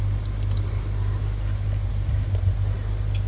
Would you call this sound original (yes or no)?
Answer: yes